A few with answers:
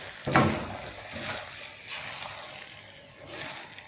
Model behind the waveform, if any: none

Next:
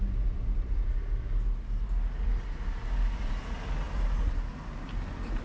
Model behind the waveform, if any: none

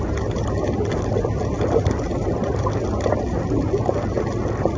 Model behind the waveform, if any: none